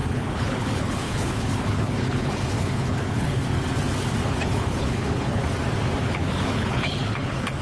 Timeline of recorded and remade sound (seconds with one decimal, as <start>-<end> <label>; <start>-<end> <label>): 0.0-3.4 remade; 3.4-4.3 recorded; 4.3-5.4 remade; 5.4-6.0 recorded; 6.0-7.6 remade